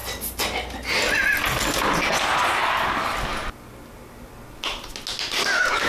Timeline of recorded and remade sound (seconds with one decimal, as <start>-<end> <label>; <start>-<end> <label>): 0.0-5.9 recorded